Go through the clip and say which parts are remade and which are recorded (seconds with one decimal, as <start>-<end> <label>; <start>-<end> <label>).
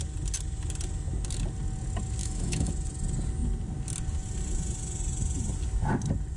0.0-2.2 recorded; 2.2-2.7 remade; 2.7-6.4 recorded